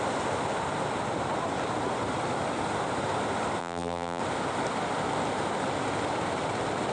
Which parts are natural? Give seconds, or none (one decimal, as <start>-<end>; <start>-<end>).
0.0-3.6; 4.2-6.9